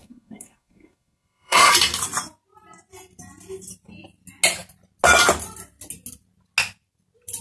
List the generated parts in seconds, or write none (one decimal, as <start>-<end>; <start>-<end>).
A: 0.0-1.7